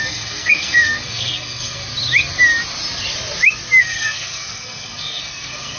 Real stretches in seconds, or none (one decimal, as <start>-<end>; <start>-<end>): 1.8-3.8